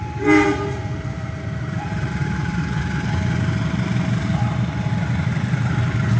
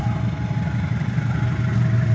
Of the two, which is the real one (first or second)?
second